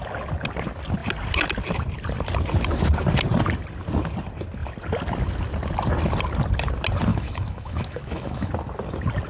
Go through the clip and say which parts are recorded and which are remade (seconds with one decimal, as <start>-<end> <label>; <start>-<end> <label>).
0.0-7.1 recorded; 7.1-8.5 remade; 8.5-9.3 recorded